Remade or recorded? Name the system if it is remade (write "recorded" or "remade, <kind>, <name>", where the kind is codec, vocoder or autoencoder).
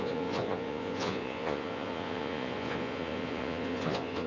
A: remade, vocoder, Vocos